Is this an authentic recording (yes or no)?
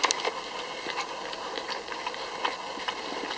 yes